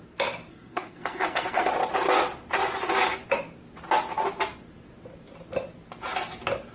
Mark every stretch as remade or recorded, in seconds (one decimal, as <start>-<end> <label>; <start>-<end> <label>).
0.0-0.5 recorded; 0.5-1.7 remade; 1.7-6.7 recorded

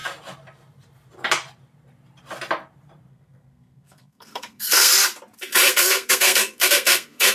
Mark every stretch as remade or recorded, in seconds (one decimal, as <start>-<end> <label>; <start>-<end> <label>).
0.0-3.1 recorded; 3.1-4.9 remade; 4.9-5.7 recorded; 5.7-7.3 remade

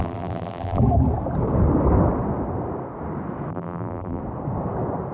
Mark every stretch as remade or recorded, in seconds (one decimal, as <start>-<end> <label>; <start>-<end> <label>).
0.0-0.8 remade; 0.8-3.5 recorded; 3.5-4.2 remade; 4.2-5.1 recorded

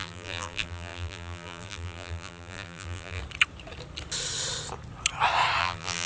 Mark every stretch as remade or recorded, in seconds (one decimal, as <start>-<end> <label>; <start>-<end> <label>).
0.0-3.2 remade; 3.2-5.6 recorded; 5.6-6.1 remade

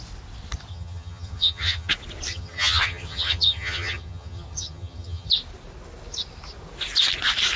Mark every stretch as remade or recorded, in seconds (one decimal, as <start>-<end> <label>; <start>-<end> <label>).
0.0-0.7 recorded; 0.7-1.9 remade; 1.9-2.3 recorded; 2.3-5.3 remade; 5.3-7.6 recorded

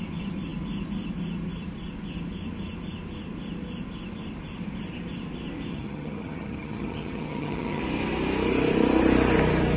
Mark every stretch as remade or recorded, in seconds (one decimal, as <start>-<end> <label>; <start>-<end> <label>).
0.0-5.7 recorded; 5.7-7.8 remade; 7.8-9.8 recorded

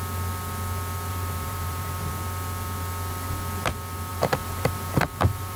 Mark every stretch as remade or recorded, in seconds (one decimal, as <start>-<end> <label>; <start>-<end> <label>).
0.0-1.1 recorded; 1.1-2.1 remade; 2.1-4.1 recorded; 4.1-5.6 remade